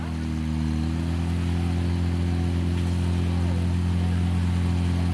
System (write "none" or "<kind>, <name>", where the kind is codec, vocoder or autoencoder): none